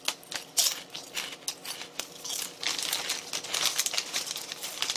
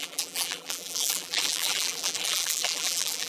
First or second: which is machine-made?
second